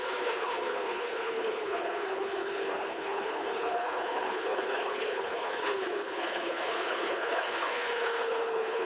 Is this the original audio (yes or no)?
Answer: no